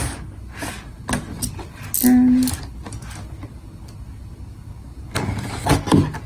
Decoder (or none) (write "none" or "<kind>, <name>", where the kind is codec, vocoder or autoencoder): none